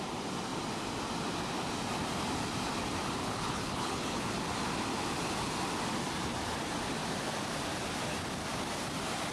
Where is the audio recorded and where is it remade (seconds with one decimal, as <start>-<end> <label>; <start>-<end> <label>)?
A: 0.0-3.2 recorded; 3.2-4.3 remade; 4.3-9.3 recorded